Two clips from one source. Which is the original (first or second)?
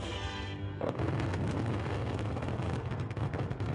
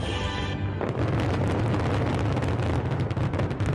second